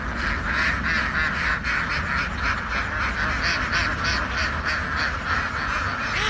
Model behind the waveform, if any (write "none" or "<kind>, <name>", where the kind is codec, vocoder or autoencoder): none